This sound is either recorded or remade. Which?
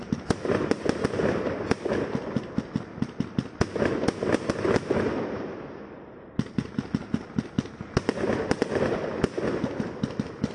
recorded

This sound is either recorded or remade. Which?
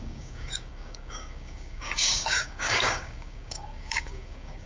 remade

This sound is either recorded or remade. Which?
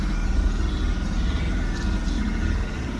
recorded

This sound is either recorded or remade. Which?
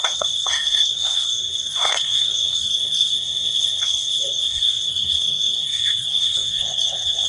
remade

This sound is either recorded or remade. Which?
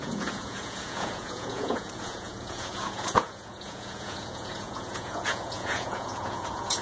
remade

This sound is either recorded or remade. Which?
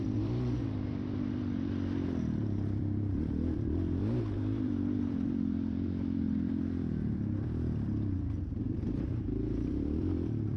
remade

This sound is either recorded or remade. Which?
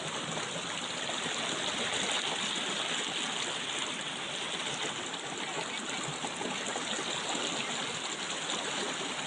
recorded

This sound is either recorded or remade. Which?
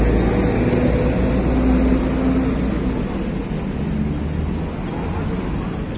recorded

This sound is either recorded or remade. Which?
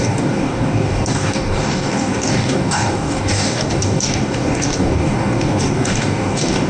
remade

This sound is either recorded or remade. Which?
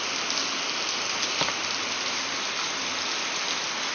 recorded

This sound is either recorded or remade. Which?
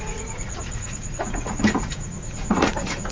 remade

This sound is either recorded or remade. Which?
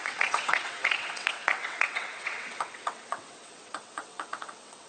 remade